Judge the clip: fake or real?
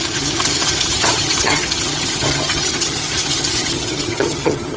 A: fake